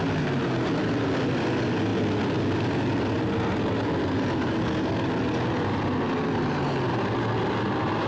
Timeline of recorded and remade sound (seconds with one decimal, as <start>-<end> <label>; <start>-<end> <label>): 0.0-8.1 recorded